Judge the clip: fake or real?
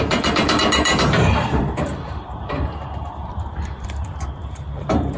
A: fake